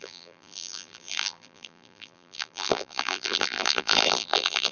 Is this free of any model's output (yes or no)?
no